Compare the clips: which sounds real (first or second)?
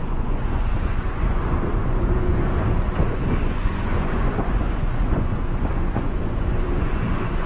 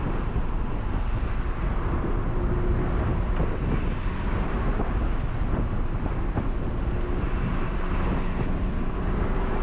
second